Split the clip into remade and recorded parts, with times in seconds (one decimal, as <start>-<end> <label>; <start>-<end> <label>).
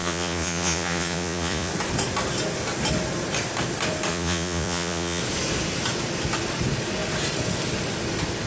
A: 0.0-1.7 remade; 1.7-4.1 recorded; 4.1-5.2 remade; 5.2-8.5 recorded